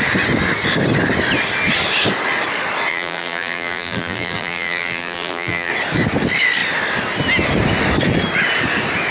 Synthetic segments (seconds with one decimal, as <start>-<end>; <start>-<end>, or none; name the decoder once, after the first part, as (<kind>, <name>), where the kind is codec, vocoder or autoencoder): 2.9-5.7 (vocoder, BigVGAN v2)